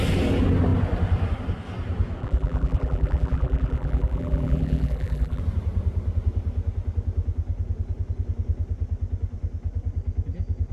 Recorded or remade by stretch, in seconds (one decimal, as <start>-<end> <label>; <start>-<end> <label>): 0.0-2.2 recorded; 2.2-5.4 remade; 5.4-10.7 recorded

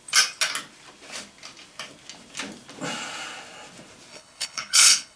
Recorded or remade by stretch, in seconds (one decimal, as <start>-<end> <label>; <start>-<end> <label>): 0.0-4.1 recorded; 4.1-5.2 remade

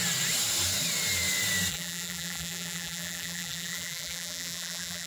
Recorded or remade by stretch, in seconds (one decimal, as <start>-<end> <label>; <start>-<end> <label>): 0.0-1.7 recorded; 1.7-5.1 remade

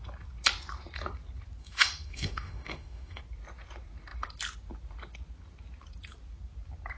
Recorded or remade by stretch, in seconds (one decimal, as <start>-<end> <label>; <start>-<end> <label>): 0.0-1.6 recorded; 1.6-3.2 remade; 3.2-7.0 recorded

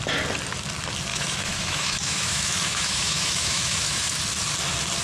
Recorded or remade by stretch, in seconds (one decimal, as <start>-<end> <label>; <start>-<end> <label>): 0.0-1.1 recorded; 1.1-4.1 remade; 4.1-5.0 recorded

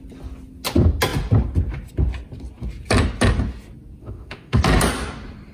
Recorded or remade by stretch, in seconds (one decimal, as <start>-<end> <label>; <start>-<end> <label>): 0.0-4.0 recorded; 4.0-4.6 remade; 4.6-5.5 recorded